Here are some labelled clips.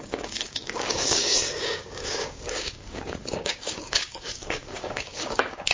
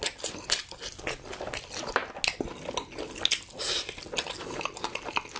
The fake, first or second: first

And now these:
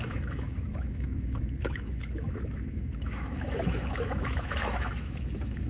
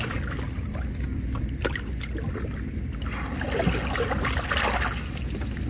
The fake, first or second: first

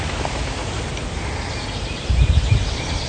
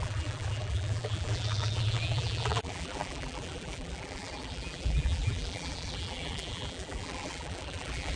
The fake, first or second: second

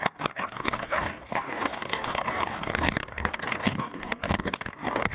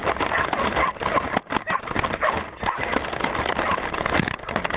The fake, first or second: first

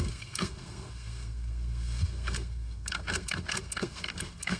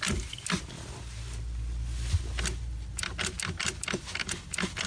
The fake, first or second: first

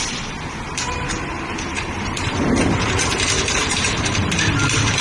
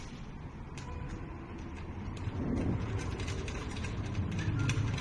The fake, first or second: first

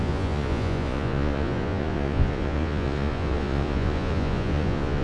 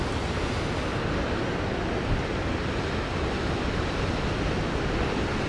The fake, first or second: first